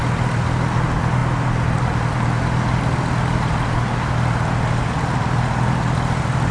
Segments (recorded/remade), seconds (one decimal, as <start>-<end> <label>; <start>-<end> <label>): 0.0-6.5 recorded